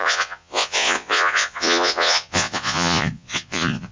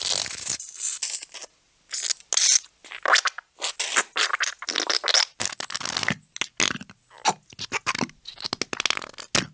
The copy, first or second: first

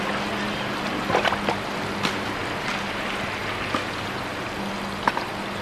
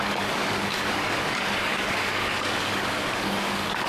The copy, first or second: second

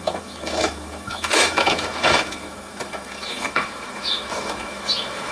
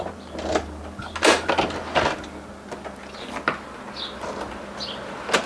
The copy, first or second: first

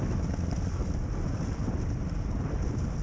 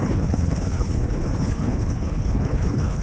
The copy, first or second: second